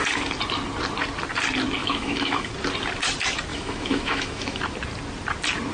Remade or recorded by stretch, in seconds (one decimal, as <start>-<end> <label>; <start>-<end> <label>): 0.0-1.8 recorded; 1.8-2.5 remade; 2.5-3.5 recorded; 3.5-4.6 remade; 4.6-5.7 recorded